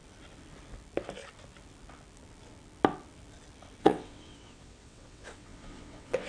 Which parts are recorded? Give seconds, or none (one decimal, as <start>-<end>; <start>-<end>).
0.0-3.8